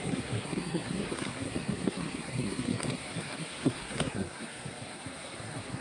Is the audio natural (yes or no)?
no